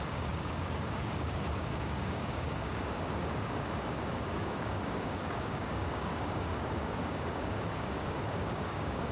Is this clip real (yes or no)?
no